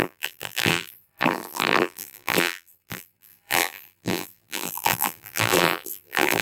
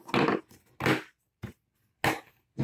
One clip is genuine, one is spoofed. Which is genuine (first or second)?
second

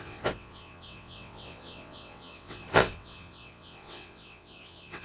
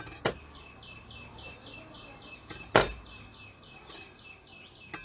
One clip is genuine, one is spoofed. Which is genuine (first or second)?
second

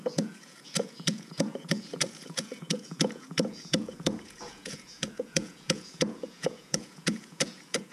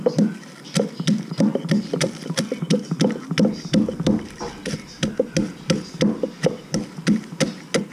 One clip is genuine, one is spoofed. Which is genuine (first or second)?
second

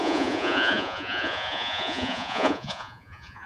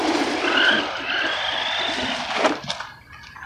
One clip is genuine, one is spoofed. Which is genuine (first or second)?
second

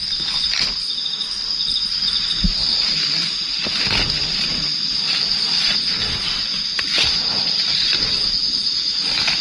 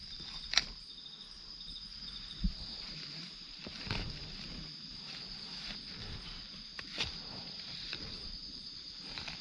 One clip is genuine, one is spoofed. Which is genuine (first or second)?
first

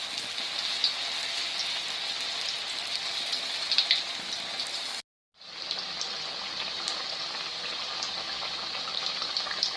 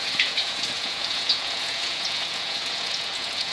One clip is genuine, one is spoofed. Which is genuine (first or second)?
first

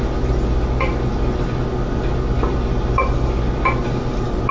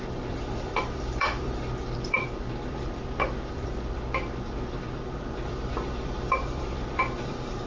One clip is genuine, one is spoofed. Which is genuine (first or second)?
first